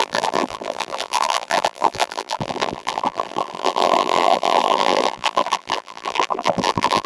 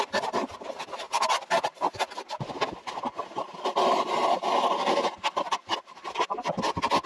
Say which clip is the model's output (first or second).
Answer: first